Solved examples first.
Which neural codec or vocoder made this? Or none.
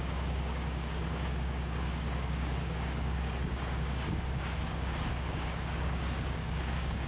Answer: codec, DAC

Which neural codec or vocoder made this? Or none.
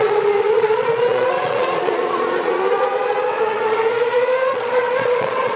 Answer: vocoder, Vocos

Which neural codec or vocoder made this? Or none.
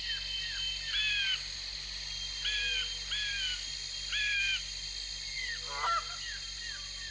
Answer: none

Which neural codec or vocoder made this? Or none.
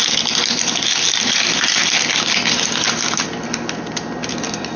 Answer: none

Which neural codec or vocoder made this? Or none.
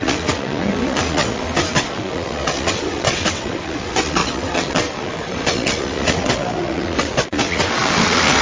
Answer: vocoder, WaveNeXt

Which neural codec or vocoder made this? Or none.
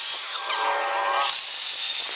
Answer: none